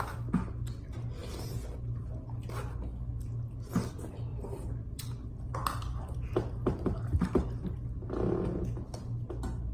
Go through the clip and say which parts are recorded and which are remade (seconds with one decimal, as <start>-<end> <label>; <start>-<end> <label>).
0.0-1.2 recorded; 1.2-2.1 remade; 2.1-4.3 recorded; 4.3-7.6 remade; 7.6-9.7 recorded